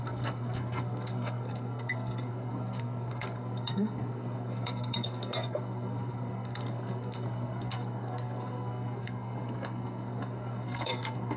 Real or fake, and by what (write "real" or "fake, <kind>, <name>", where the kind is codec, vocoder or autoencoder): fake, codec, SNAC